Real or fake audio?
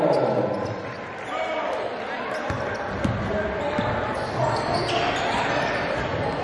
real